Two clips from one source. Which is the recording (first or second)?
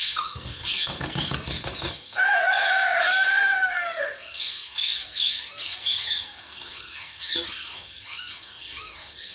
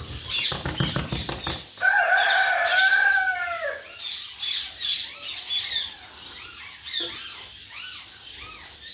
second